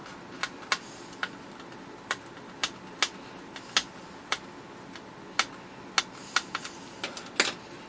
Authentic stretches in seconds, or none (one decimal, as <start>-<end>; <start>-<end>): 0.0-7.9